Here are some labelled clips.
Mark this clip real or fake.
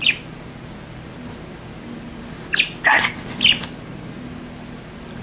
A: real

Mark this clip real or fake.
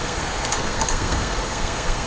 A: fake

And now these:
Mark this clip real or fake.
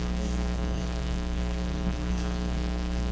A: fake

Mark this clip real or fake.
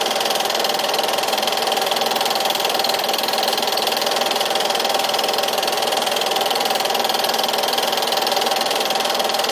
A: fake